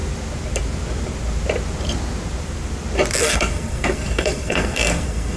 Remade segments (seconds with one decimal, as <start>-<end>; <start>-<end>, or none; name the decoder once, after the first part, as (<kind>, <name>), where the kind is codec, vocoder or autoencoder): 3.2-5.4 (codec, SNAC)